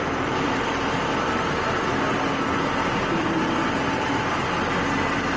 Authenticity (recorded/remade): recorded